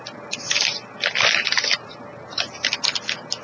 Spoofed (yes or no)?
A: no